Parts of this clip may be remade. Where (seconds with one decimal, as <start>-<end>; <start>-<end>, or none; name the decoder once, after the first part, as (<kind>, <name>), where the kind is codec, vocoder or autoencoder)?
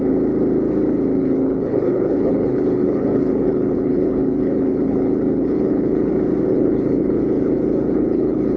1.2-6.1 (codec, HILCodec); 6.5-8.6